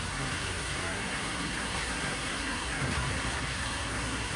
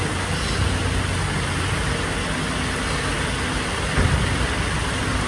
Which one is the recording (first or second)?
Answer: second